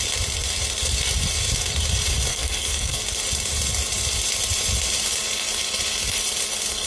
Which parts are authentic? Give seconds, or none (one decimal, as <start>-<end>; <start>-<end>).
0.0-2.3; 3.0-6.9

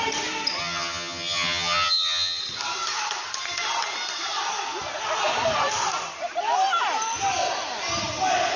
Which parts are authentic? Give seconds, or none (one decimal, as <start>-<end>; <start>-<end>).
0.0-0.6; 2.4-8.6

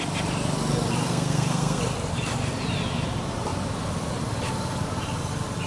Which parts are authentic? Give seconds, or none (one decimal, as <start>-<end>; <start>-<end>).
0.0-1.0; 1.8-5.7

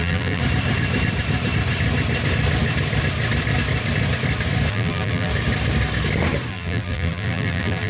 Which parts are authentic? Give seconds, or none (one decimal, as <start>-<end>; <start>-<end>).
0.4-4.7; 5.3-6.5

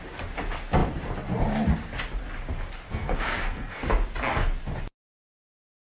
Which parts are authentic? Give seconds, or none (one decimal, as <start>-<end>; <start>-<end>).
0.0-2.9; 3.9-5.9

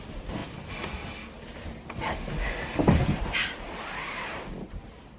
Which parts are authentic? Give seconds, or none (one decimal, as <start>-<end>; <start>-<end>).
0.0-5.2